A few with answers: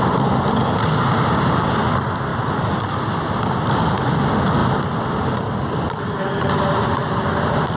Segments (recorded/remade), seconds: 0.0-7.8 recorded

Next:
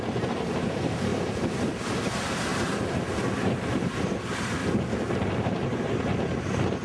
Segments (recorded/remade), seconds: 0.0-1.1 remade; 1.1-1.9 recorded; 1.9-4.6 remade; 4.6-5.3 recorded; 5.3-6.8 remade

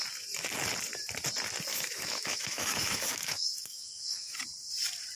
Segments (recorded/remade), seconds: 0.0-1.7 recorded; 1.7-4.4 remade; 4.4-5.1 recorded